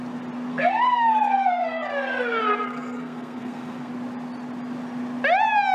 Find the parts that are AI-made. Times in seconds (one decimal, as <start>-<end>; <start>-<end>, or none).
0.5-3.9